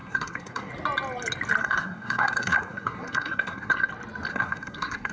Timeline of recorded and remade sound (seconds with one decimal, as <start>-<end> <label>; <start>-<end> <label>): 0.0-0.7 remade; 0.7-1.6 recorded; 1.6-3.9 remade; 3.9-4.3 recorded; 4.3-5.1 remade